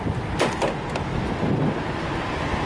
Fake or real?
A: real